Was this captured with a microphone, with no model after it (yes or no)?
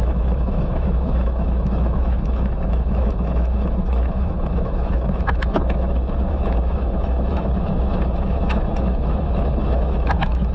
no